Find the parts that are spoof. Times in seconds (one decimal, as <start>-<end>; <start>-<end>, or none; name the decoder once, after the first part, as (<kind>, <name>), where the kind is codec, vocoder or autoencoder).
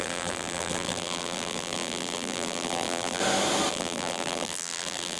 0.0-3.2 (vocoder, BigVGAN v2); 3.7-5.2